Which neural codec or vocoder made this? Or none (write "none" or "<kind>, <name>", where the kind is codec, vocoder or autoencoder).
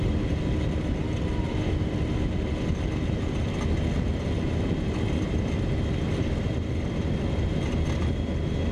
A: none